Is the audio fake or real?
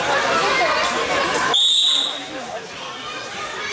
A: real